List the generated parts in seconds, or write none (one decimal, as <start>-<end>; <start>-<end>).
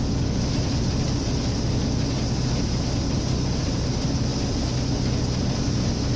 none